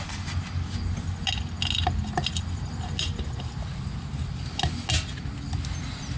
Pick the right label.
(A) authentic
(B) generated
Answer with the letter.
A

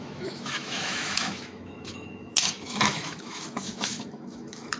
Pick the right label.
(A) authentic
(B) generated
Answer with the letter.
B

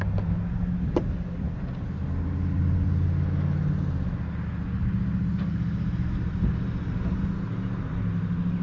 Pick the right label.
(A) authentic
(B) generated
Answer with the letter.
A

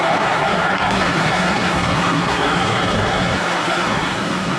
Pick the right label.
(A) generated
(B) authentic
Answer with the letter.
A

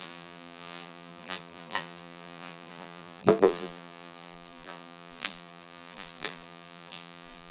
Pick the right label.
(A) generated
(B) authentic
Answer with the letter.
A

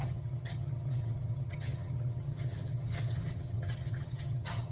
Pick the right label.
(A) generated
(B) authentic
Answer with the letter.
A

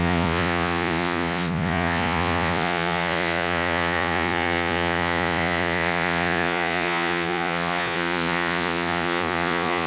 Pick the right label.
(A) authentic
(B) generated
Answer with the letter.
B